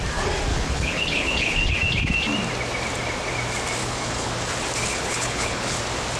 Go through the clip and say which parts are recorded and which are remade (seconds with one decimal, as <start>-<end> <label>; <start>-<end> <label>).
0.0-0.5 recorded; 0.5-1.7 remade; 1.7-3.8 recorded; 3.8-4.3 remade; 4.3-4.9 recorded; 4.9-5.8 remade; 5.8-6.2 recorded